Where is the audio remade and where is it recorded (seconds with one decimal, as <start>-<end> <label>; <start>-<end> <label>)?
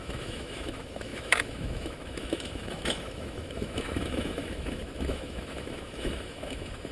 0.0-6.9 remade